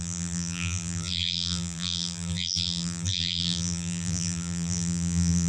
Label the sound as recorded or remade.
remade